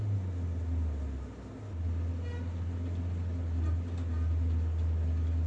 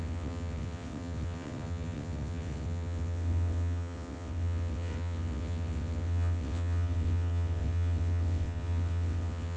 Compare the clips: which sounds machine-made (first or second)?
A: second